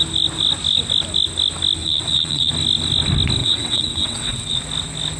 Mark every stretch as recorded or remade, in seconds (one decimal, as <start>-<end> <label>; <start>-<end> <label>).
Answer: 0.0-1.8 recorded; 1.8-2.5 remade; 2.5-3.4 recorded; 3.4-4.6 remade; 4.6-5.2 recorded